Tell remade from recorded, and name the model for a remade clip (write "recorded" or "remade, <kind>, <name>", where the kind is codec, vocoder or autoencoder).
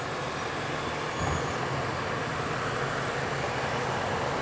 recorded